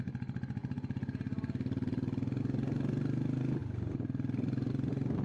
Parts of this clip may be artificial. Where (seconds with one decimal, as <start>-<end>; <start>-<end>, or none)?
none